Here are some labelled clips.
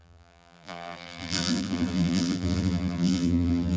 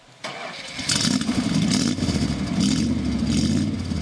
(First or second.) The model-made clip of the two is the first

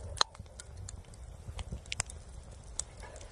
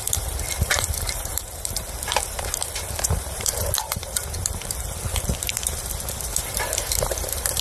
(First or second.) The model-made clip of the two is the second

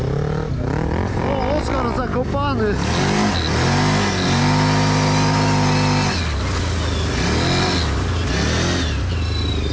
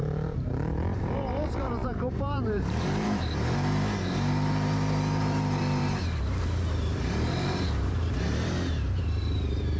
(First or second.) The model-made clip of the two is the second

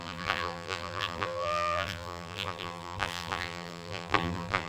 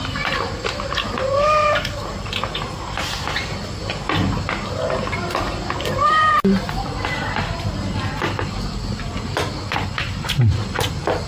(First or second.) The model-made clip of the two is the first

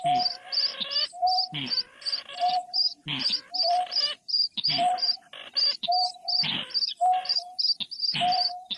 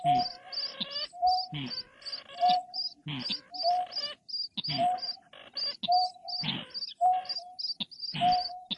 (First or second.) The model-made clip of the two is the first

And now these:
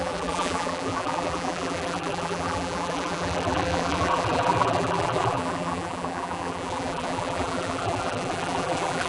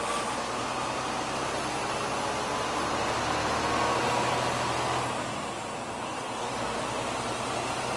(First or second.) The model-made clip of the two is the first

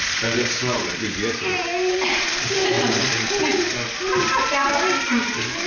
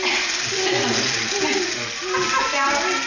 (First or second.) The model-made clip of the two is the first